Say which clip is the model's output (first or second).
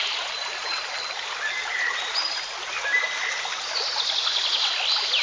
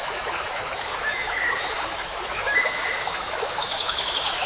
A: second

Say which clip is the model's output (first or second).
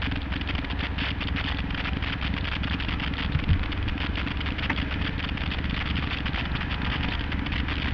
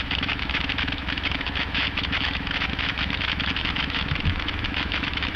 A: second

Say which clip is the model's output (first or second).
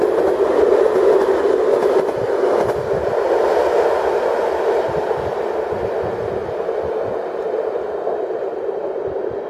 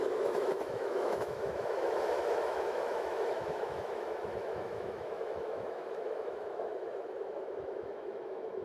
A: second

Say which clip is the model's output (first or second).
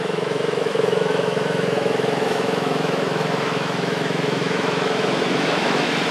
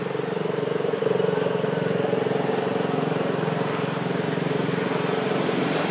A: first